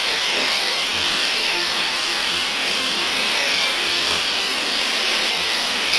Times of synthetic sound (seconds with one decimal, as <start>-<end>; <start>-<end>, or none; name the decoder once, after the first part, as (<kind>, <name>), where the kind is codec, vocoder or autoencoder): 0.0-4.8 (codec, DAC); 5.3-6.0